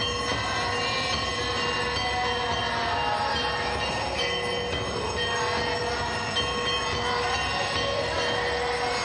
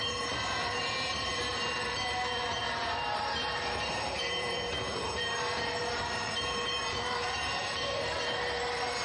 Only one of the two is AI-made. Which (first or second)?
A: second